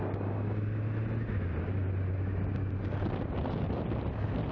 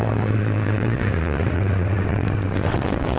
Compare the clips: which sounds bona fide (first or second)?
first